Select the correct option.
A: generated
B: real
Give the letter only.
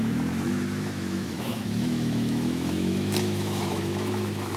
A